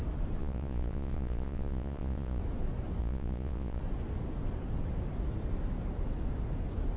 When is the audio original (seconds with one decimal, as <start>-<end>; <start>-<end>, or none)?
0.0-0.4; 2.4-3.0; 3.8-7.0

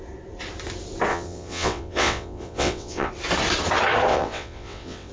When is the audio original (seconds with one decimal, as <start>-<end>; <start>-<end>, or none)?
0.0-1.1; 3.1-4.1

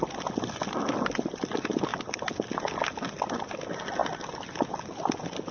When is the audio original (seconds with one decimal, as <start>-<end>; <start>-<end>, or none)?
0.0-5.5

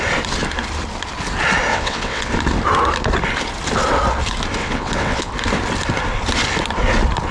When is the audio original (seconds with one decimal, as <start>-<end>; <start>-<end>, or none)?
0.0-1.7; 2.3-4.6; 5.3-7.3

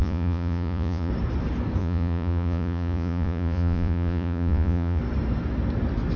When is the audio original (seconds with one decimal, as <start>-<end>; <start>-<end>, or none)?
1.1-1.8; 5.0-6.2